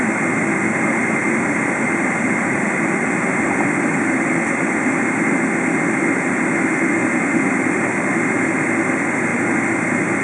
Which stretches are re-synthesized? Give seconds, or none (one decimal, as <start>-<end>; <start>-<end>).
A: 1.0-5.5; 7.0-8.4; 9.3-10.2